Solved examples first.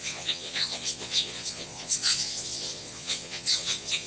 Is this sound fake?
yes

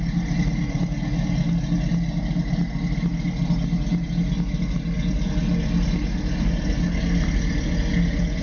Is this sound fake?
no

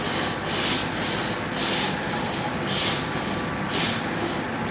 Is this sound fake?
no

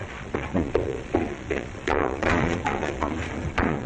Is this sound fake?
yes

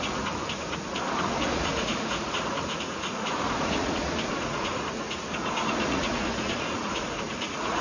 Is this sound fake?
yes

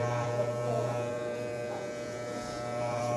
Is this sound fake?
yes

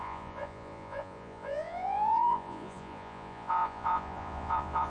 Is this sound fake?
yes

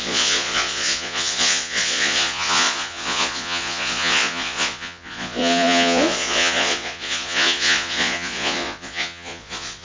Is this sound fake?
yes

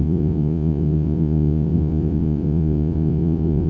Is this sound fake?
yes